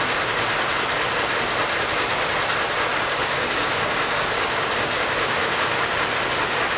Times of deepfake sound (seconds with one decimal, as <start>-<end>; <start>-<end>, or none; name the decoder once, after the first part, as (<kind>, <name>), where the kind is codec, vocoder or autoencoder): 2.9-4.7 (codec, DAC); 5.4-5.9